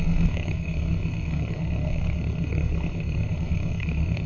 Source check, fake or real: fake